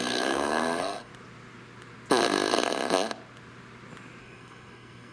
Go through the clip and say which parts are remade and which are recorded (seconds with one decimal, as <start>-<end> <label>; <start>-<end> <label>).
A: 0.0-1.1 remade; 1.1-4.2 recorded; 4.2-5.1 remade

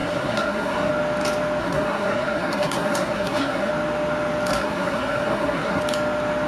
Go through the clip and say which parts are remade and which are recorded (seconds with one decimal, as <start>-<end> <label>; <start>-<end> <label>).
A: 0.0-0.9 remade; 0.9-1.6 recorded; 1.6-3.7 remade; 3.7-4.5 recorded; 4.5-5.8 remade; 5.8-6.5 recorded

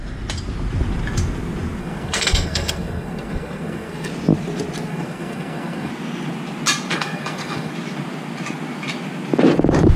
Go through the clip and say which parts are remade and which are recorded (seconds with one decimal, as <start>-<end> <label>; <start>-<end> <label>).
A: 0.0-1.8 recorded; 1.8-4.1 remade; 4.1-4.8 recorded; 4.8-5.9 remade; 5.9-6.9 recorded; 6.9-7.7 remade; 7.7-10.0 recorded